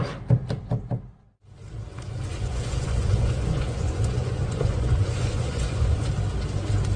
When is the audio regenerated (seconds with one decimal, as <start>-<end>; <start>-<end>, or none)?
1.9-6.1

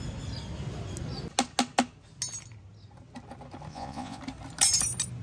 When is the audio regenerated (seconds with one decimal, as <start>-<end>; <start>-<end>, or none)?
3.7-4.2

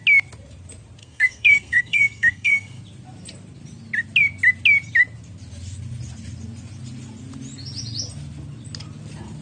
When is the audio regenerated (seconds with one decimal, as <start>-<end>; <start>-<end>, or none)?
1.0-2.8

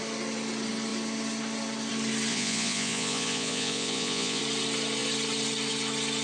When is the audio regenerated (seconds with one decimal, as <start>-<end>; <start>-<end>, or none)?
2.3-4.4

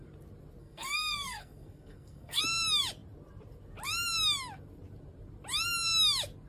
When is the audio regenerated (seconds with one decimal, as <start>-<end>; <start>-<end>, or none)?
0.6-2.4

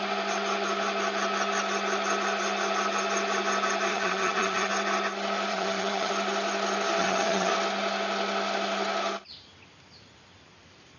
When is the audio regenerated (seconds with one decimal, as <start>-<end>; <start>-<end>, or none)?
3.9-4.7; 5.5-6.1; 7.0-7.5

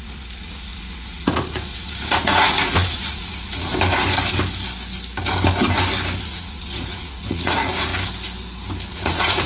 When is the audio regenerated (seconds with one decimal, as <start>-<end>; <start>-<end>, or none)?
0.0-3.7; 6.2-7.9; 8.9-9.5

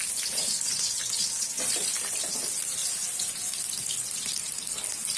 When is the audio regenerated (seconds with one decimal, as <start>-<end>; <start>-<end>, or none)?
2.8-3.5